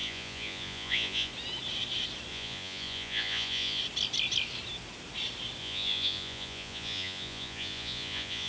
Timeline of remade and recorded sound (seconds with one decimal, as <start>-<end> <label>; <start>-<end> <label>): 0.0-1.3 remade; 1.3-2.3 recorded; 2.3-3.8 remade; 3.8-5.6 recorded; 5.6-8.5 remade